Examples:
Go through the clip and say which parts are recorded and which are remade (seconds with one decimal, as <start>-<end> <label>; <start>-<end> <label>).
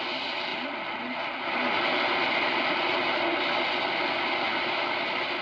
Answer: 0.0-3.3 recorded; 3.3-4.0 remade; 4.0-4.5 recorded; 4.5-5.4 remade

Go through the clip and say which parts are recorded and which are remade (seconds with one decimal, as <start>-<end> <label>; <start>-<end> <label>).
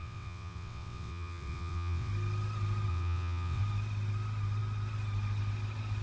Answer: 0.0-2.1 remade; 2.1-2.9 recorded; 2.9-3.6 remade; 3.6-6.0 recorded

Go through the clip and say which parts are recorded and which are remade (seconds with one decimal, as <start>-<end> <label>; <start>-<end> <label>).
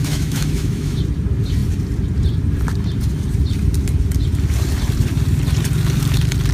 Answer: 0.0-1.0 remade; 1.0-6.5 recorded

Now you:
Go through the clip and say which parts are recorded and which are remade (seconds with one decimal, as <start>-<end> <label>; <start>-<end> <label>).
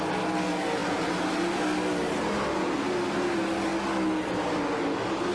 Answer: 0.0-5.3 recorded